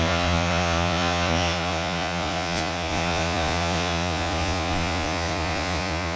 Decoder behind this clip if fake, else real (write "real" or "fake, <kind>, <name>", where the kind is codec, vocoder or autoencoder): fake, vocoder, Vocos